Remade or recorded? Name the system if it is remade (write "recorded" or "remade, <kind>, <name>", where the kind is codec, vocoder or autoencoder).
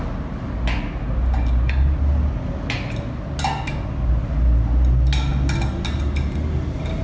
recorded